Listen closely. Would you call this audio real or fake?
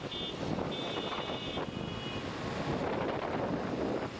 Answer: real